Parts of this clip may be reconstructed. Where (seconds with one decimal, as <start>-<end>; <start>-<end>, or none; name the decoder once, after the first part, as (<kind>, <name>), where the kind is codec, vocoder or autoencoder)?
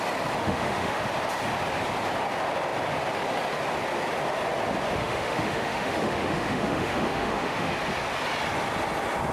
0.4-1.0 (autoencoder, DAC-VAE); 5.0-7.7